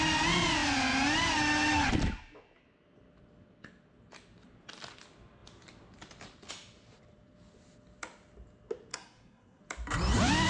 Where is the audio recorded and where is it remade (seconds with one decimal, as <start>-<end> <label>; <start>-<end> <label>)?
0.0-8.9 recorded; 8.9-9.6 remade; 9.6-10.5 recorded